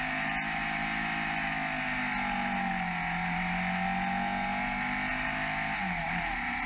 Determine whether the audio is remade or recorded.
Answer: recorded